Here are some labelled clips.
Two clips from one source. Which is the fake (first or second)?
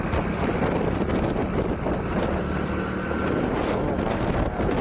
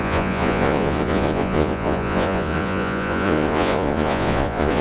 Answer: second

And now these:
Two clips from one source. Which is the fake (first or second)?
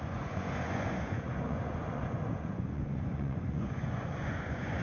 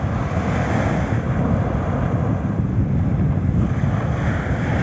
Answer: first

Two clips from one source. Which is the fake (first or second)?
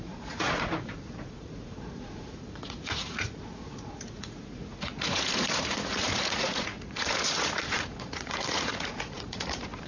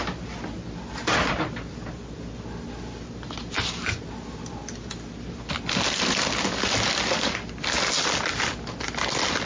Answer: first